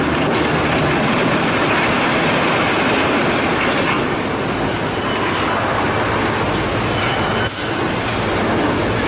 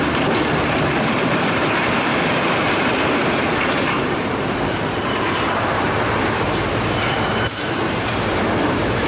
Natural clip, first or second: first